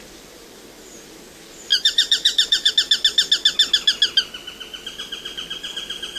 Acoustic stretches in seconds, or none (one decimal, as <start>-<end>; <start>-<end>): 0.0-1.7; 2.7-6.2